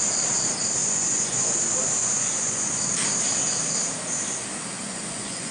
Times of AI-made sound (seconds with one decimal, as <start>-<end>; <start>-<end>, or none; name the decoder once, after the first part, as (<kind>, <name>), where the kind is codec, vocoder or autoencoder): 0.8-1.5 (vocoder, Vocos); 2.0-2.7; 4.8-5.5